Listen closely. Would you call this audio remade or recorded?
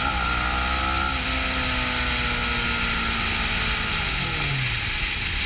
recorded